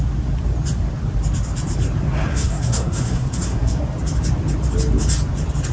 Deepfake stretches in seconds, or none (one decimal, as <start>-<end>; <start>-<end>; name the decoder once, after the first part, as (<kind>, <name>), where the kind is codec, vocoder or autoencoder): 2.3-3.8 (codec, SNAC)